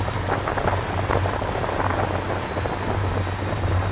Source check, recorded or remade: recorded